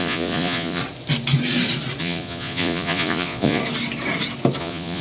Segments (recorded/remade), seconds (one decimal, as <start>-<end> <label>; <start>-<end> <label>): 0.0-0.8 remade; 0.8-2.0 recorded; 2.0-3.6 remade; 3.6-4.6 recorded; 4.6-5.0 remade